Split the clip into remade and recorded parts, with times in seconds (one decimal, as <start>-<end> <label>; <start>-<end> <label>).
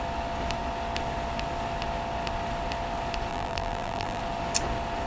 0.0-3.3 recorded; 3.3-4.2 remade; 4.2-5.1 recorded